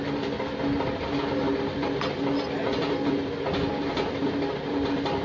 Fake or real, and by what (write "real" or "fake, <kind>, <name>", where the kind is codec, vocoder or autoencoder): real